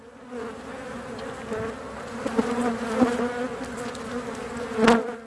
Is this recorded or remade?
recorded